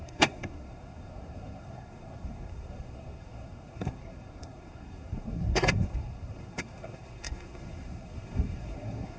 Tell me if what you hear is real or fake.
fake